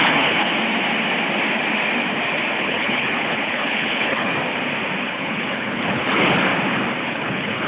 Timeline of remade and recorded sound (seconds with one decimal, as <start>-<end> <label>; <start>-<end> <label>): 0.0-0.5 remade; 0.5-2.6 recorded; 2.6-4.3 remade; 4.3-5.0 recorded; 5.0-6.5 remade; 6.5-7.1 recorded; 7.1-7.7 remade